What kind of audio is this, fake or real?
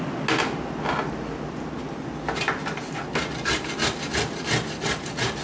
real